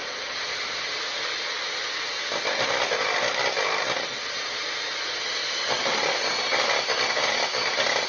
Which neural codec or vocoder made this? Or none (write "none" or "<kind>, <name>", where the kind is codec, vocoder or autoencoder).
none